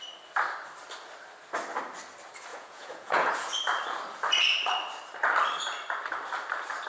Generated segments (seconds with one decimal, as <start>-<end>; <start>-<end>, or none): 2.5-3.3